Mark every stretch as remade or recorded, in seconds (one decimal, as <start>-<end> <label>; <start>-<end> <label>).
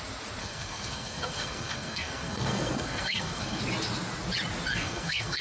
0.0-0.4 recorded; 0.4-3.6 remade; 3.6-4.7 recorded; 4.7-5.4 remade